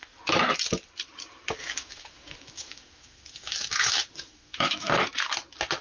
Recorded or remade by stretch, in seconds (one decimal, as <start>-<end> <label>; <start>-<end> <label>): 0.0-1.6 recorded; 1.6-4.9 remade; 4.9-5.8 recorded